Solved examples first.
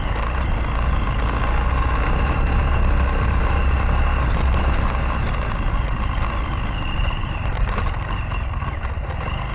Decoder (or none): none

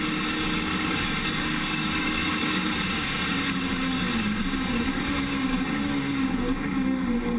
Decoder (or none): codec, DAC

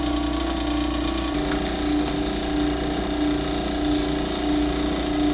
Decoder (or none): none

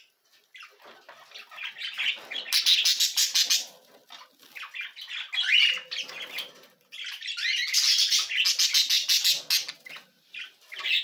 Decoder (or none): none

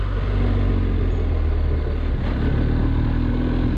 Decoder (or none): none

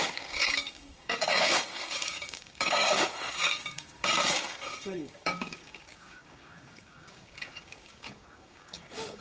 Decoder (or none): codec, DAC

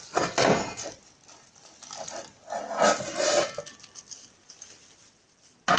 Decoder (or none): none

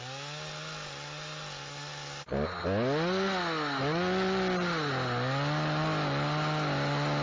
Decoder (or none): none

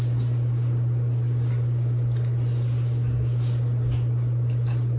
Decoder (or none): none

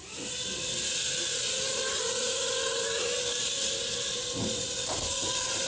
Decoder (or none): none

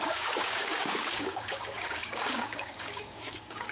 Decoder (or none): codec, DAC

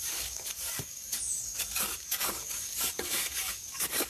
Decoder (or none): codec, DAC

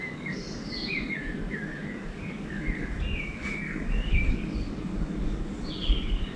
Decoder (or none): codec, DAC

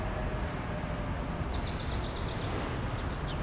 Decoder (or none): none